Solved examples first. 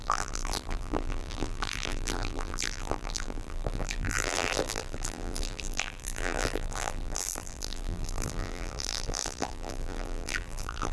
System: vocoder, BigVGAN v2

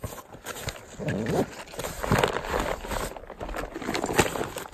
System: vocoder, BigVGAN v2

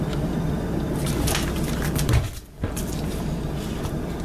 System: vocoder, BigVGAN v2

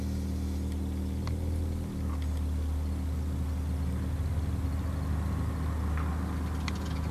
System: none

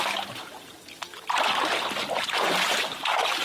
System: none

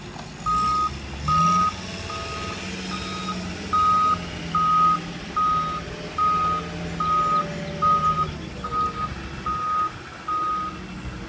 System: none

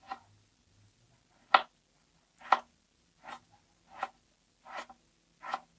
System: none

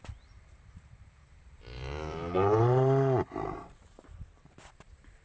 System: vocoder, BigVGAN v2